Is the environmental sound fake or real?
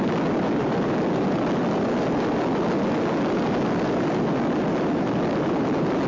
real